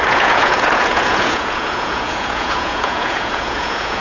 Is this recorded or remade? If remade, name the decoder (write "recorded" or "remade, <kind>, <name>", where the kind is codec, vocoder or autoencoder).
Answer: remade, vocoder, Vocos